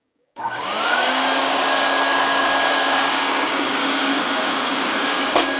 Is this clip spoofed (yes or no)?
yes